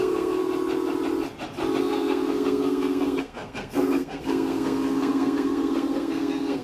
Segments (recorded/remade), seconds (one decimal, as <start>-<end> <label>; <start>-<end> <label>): 0.0-0.4 remade; 0.4-1.8 recorded; 1.8-6.6 remade